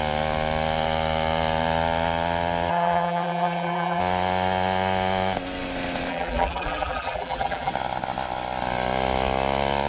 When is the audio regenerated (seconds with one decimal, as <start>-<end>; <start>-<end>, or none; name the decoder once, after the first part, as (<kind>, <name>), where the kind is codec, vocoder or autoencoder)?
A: 2.7-4.0 (vocoder, BigVGAN v2); 6.1-7.7